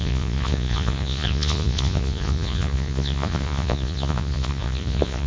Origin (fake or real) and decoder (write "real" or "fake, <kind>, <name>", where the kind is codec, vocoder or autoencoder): fake, vocoder, Vocos